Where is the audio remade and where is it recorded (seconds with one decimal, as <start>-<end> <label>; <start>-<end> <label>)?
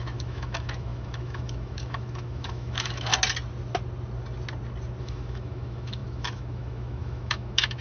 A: 0.0-3.1 remade; 3.1-5.0 recorded; 5.0-7.8 remade